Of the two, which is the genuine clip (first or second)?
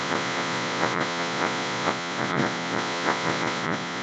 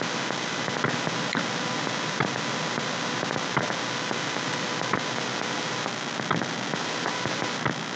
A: second